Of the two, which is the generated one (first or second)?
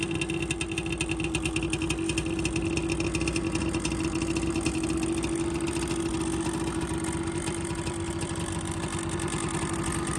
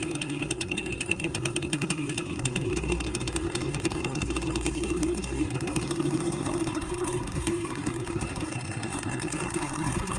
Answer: second